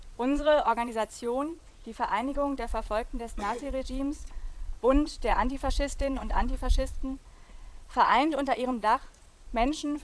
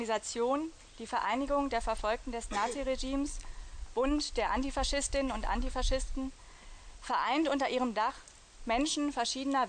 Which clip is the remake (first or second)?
first